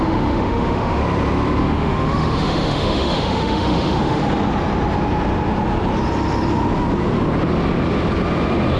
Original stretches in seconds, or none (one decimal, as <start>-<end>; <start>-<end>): 1.0-1.6; 4.2-8.8